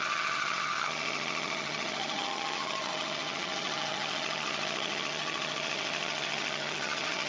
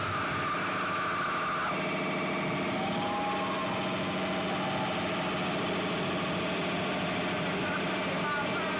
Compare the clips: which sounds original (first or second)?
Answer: second